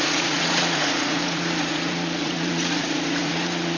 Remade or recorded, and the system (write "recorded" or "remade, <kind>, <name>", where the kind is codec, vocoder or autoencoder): remade, vocoder, Vocos